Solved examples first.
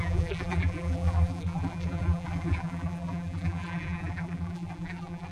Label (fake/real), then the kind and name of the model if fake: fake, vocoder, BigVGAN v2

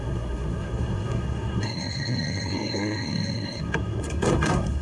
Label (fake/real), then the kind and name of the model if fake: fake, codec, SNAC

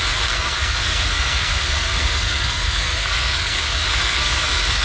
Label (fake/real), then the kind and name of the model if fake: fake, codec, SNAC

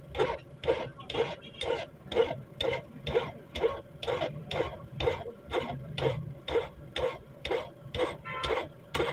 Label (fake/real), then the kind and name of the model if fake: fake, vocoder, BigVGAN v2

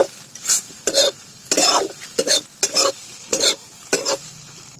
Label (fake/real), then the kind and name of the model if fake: real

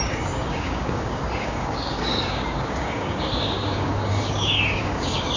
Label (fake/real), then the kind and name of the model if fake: fake, codec, DAC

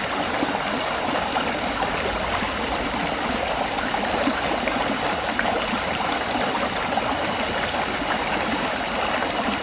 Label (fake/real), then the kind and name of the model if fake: real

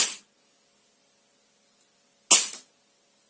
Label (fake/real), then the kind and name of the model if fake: real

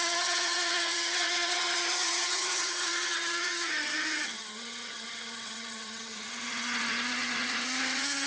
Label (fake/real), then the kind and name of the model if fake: fake, vocoder, HiFi-GAN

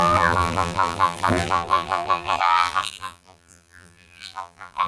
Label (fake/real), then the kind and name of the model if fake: fake, vocoder, BigVGAN v2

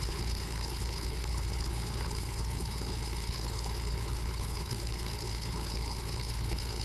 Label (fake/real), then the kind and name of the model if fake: fake, codec, HILCodec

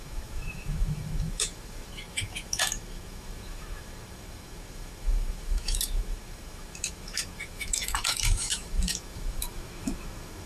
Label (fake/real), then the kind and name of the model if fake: fake, autoencoder, DAC-VAE